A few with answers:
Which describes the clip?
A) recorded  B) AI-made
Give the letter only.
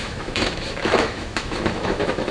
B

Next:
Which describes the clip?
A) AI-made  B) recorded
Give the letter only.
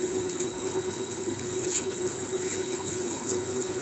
A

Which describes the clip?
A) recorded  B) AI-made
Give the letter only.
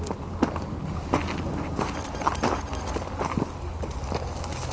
A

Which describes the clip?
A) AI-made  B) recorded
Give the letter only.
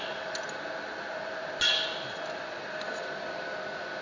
B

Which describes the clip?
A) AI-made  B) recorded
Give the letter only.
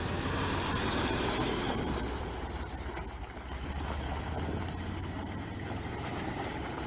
A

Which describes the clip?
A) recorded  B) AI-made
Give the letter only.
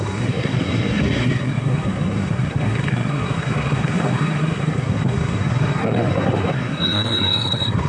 B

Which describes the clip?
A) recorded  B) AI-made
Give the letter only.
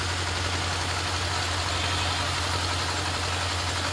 A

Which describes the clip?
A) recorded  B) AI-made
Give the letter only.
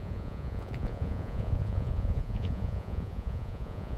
B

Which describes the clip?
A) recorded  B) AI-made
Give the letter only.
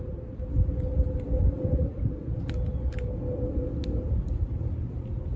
A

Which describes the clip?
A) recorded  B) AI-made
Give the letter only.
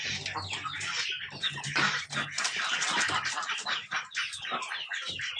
A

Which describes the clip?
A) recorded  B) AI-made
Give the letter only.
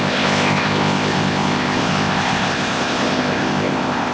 B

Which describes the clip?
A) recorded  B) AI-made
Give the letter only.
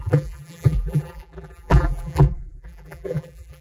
B